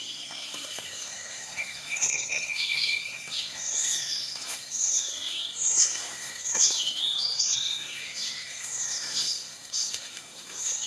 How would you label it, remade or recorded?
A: remade